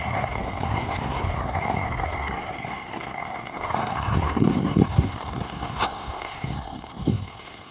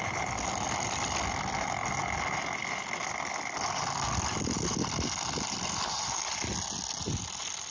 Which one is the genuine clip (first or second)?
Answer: second